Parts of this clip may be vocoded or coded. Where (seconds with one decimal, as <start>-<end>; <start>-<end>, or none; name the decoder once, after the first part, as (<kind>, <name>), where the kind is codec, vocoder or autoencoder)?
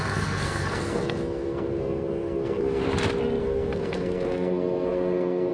0.0-2.8 (codec, SNAC); 3.4-5.5